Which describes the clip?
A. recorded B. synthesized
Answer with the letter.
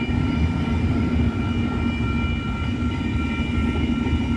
A